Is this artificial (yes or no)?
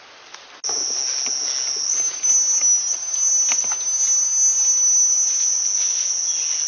no